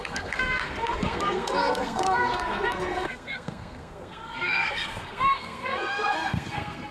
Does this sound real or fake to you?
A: fake